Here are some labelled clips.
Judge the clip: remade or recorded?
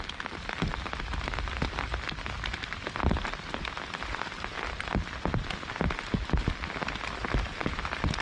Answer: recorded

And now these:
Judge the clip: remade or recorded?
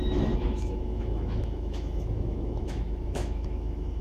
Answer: remade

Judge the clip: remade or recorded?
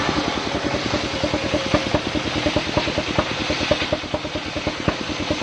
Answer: recorded